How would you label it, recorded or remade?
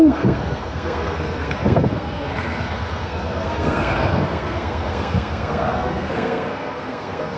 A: remade